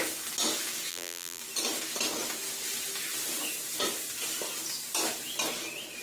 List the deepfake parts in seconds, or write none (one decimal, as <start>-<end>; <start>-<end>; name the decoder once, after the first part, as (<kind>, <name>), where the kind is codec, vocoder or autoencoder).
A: 0.9-1.4 (vocoder, BigVGAN v2)